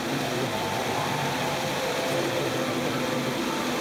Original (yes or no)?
yes